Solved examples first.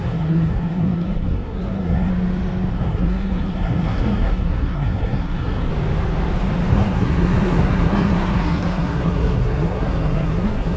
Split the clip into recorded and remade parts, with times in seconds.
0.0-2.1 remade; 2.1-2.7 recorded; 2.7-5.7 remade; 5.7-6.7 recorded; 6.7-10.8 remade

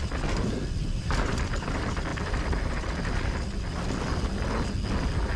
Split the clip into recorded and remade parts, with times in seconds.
0.0-5.4 recorded